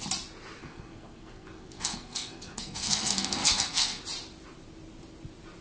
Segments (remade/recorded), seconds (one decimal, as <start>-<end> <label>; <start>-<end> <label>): 0.0-0.6 recorded; 0.6-4.0 remade; 4.0-5.6 recorded

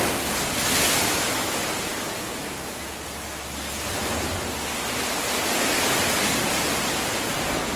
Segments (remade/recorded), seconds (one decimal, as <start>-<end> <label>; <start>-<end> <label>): 0.0-7.8 recorded